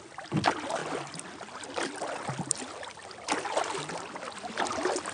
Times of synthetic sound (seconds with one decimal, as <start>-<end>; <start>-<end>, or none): none